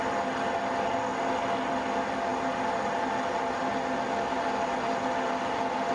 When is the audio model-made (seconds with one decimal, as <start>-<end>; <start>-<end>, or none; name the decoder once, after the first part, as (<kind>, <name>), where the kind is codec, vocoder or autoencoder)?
none